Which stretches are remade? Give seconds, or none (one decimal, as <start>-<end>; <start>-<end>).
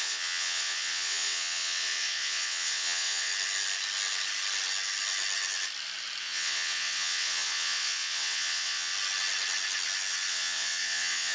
0.0-3.3; 6.2-8.9; 10.3-11.3